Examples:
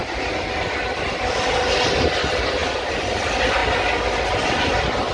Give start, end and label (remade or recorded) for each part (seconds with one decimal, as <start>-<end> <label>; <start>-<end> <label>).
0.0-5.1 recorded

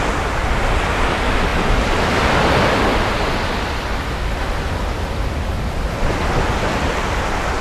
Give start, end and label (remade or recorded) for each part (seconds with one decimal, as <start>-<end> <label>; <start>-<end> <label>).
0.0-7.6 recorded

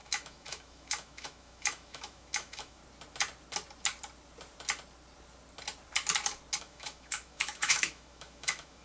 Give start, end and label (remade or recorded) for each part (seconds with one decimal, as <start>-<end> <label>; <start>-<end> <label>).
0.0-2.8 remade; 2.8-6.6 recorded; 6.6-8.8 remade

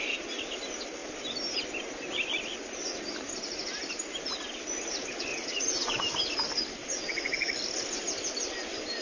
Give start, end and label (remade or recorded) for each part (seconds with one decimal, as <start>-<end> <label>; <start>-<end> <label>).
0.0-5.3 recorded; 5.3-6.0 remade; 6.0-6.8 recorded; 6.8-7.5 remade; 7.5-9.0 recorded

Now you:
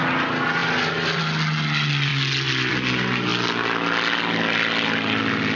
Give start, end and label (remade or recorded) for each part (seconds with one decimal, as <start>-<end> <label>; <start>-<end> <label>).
0.0-0.6 recorded; 0.6-1.2 remade; 1.2-2.1 recorded; 2.1-2.7 remade; 2.7-5.6 recorded